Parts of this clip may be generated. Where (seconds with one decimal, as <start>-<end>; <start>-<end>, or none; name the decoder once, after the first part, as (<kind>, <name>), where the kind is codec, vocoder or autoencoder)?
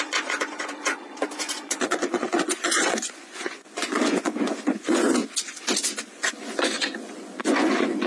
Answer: 0.0-5.2 (vocoder, Vocos); 6.1-8.1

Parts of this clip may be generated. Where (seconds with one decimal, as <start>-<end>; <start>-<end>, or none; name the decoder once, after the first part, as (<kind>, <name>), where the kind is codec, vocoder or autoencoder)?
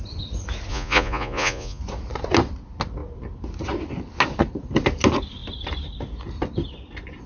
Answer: 0.7-1.8 (vocoder, Vocos)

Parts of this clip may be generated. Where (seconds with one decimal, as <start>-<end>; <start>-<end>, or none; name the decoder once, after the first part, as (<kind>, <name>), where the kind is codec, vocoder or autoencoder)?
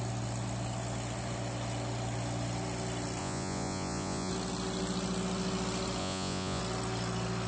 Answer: 3.2-4.3 (vocoder, Vocos); 6.0-6.6